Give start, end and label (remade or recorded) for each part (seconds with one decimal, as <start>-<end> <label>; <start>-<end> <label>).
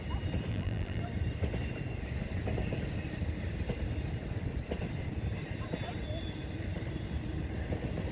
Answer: 0.0-0.5 recorded; 0.5-1.0 remade; 1.0-8.1 recorded